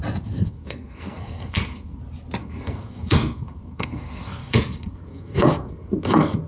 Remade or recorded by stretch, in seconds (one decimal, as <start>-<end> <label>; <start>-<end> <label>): 0.0-0.4 recorded; 0.4-2.0 remade; 2.0-2.4 recorded; 2.4-6.5 remade